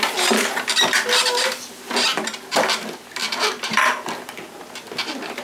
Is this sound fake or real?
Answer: real